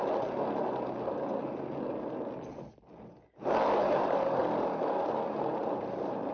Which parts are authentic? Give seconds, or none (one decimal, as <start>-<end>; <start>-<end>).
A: 0.0-3.8; 4.4-5.3